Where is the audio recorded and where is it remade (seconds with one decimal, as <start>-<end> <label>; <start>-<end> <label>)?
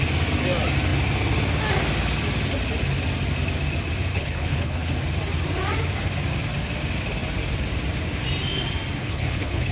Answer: 0.0-4.1 recorded; 4.1-4.9 remade; 4.9-9.0 recorded; 9.0-9.7 remade